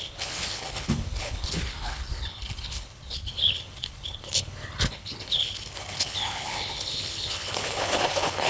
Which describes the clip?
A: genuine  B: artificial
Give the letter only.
B